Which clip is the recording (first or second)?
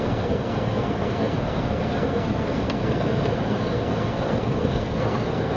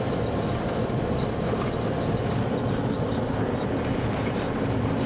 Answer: second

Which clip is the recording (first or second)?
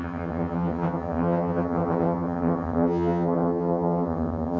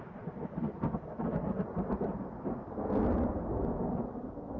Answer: second